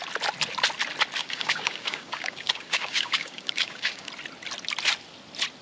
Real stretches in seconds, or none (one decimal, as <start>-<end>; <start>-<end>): 0.0-1.2; 4.1-5.6